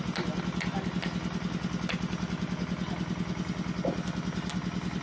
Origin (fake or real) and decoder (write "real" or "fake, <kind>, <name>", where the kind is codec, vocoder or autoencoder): real